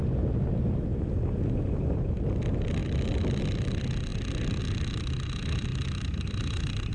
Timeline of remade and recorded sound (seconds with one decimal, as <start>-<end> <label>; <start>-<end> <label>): 0.0-6.9 recorded